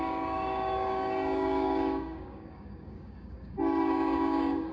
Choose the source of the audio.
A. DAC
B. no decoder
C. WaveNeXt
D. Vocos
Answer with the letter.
A